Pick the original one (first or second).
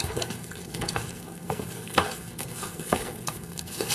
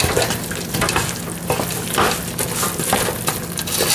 second